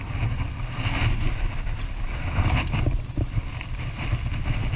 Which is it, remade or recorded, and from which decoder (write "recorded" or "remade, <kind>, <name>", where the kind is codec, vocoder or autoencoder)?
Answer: recorded